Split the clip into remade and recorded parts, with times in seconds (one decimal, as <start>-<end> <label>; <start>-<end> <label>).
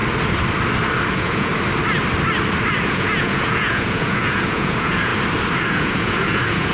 0.0-1.1 recorded; 1.1-1.5 remade; 1.5-2.8 recorded; 2.8-5.1 remade; 5.1-5.6 recorded; 5.6-6.7 remade